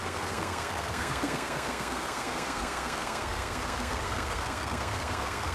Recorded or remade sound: remade